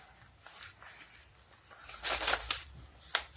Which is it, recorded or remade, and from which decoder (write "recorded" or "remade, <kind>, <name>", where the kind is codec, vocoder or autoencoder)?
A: recorded